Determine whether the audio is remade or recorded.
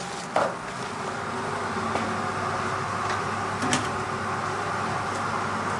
recorded